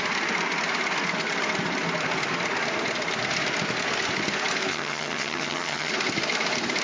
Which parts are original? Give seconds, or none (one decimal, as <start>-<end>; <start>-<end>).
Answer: 0.0-4.7; 5.9-6.8